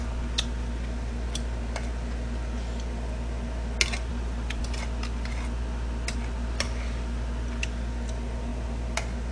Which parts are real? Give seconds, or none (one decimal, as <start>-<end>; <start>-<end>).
0.0-4.1; 4.6-9.3